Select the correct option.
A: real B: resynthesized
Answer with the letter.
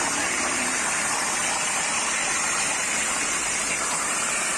B